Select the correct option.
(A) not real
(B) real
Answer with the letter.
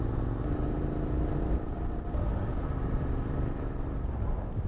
B